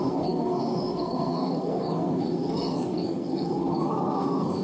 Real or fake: fake